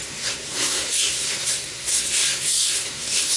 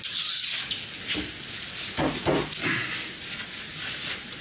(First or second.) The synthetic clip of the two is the first